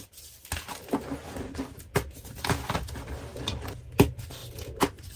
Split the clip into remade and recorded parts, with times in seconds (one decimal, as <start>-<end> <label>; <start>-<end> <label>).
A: 0.0-5.2 recorded